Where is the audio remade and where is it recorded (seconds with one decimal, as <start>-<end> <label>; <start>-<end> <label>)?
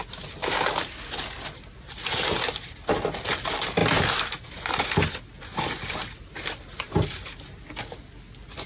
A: 0.0-8.7 recorded